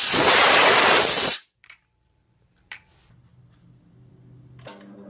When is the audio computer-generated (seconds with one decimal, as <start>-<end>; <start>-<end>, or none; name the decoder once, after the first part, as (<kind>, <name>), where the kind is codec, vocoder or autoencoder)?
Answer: 1.3-4.1 (vocoder, BigVGAN v2)